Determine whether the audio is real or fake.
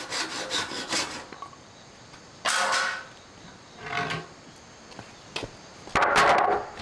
real